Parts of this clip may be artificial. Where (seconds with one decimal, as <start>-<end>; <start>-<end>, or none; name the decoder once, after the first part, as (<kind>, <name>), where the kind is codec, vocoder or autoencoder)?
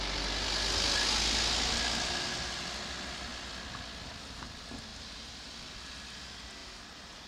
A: 4.9-5.5 (vocoder, BigVGAN v2); 6.6-7.3